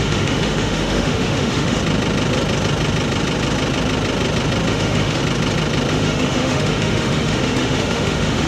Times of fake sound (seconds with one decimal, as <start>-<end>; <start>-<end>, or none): 0.0-1.8; 4.7-5.2; 5.9-8.5